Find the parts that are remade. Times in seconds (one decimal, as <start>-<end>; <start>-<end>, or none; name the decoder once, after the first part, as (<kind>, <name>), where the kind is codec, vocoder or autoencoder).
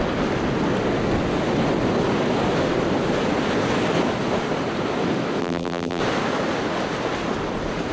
5.4-6.0 (vocoder, BigVGAN v2)